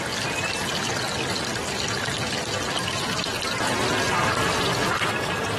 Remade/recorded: recorded